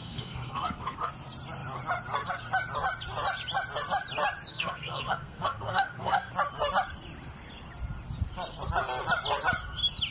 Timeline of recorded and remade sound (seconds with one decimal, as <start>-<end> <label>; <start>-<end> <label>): 0.0-1.1 remade; 1.1-4.5 recorded; 4.5-6.3 remade; 6.3-10.1 recorded